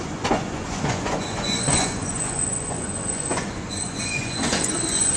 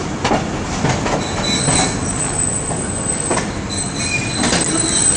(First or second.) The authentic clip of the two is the second